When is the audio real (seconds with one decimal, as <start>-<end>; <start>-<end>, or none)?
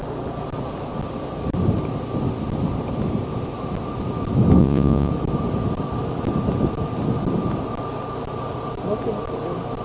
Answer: 0.0-4.6; 5.1-9.8